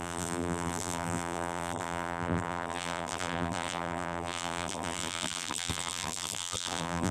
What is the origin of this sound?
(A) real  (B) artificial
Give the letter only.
B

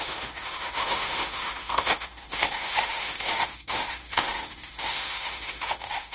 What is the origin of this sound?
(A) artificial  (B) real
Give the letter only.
A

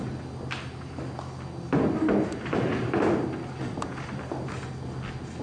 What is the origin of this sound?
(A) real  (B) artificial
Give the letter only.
A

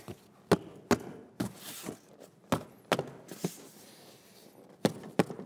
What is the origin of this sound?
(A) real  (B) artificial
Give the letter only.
A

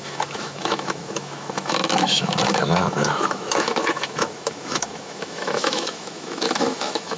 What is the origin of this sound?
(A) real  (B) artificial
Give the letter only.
B